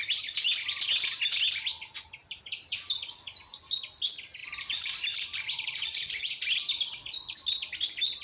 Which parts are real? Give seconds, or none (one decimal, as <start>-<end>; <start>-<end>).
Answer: 0.0-2.2; 2.8-4.4; 6.3-8.2